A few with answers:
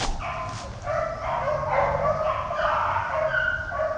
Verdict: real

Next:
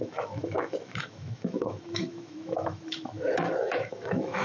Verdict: fake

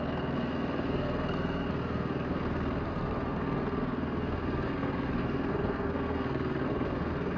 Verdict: fake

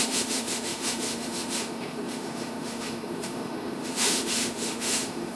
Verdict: fake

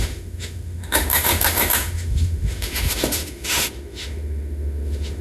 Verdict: fake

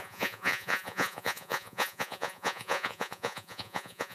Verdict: fake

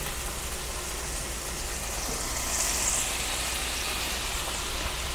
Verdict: real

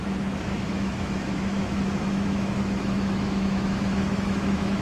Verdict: fake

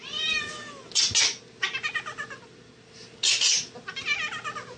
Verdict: real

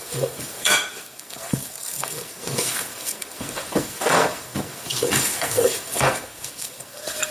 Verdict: fake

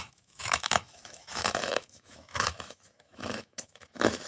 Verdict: fake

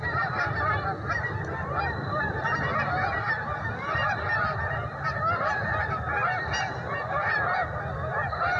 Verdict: real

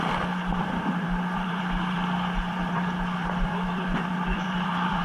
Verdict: fake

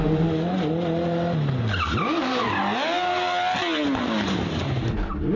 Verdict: real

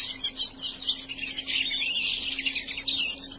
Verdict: real